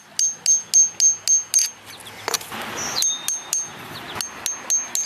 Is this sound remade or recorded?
recorded